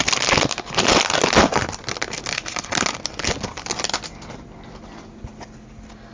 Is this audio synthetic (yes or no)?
no